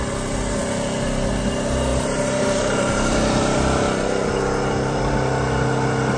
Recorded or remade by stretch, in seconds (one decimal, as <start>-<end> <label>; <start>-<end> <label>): 0.0-1.9 recorded; 1.9-5.1 remade; 5.1-6.2 recorded